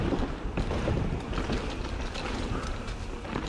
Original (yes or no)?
yes